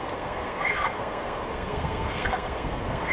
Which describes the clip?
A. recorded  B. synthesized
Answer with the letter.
B